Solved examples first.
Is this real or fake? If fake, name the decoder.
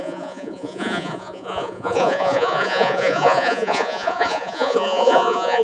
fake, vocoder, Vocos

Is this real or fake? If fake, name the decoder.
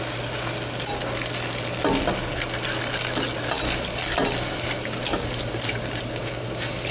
real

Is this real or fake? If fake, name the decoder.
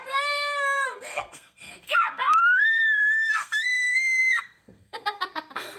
fake, codec, SNAC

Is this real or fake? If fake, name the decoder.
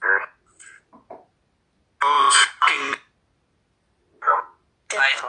real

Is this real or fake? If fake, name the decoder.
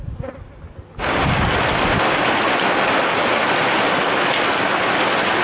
real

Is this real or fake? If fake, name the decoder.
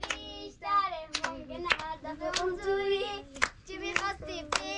real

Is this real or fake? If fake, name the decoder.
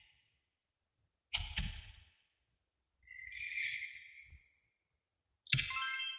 real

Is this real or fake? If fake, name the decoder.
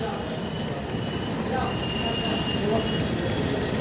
real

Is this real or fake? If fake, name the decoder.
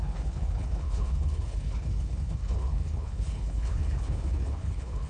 fake, codec, HILCodec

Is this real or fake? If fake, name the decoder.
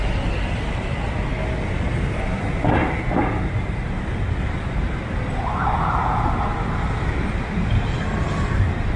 real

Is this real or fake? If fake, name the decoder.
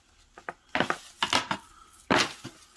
real